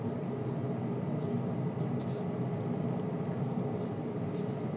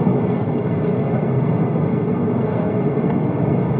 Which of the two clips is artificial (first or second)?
second